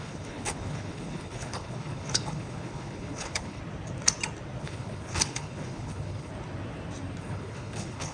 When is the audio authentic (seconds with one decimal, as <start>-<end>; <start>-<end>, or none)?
3.6-4.6; 6.3-7.2